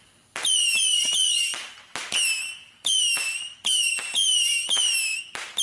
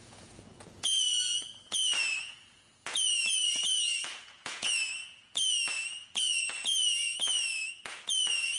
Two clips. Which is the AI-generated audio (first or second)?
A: second